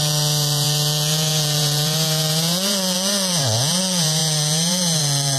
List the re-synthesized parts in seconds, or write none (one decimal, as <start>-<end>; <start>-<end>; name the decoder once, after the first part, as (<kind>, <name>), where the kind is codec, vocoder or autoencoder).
0.0-5.4 (vocoder, Vocos)